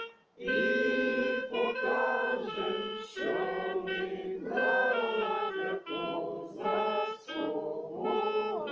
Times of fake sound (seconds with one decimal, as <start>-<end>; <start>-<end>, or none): 1.2-3.9; 4.8-5.5